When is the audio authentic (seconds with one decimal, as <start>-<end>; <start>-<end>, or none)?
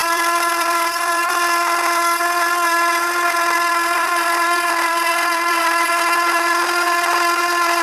1.2-3.7; 5.6-7.8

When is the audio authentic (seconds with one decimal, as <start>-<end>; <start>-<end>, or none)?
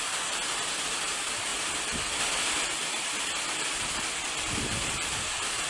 0.0-1.5; 4.9-5.7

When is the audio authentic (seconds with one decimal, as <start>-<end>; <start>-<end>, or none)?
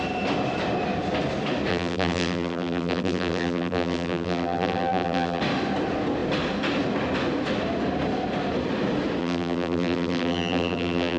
0.0-1.7; 5.4-9.2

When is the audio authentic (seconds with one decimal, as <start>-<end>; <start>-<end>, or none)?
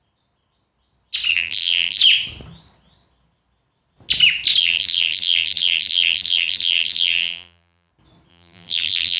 0.0-1.3; 2.0-4.6; 7.9-8.3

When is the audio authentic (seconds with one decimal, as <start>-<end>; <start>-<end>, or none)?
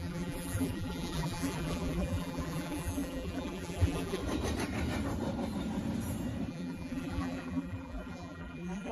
4.2-6.5